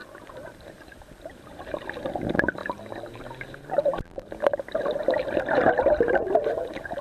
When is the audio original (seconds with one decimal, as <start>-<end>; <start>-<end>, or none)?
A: 2.0-5.0; 6.5-7.0